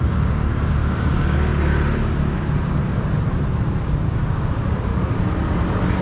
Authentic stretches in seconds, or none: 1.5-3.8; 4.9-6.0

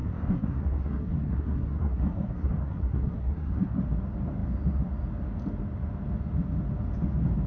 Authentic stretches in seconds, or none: 3.8-7.5